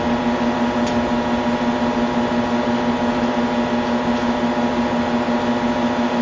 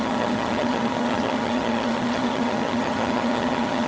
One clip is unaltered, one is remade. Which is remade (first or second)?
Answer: second